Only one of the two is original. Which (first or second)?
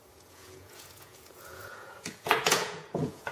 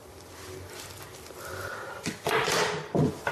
second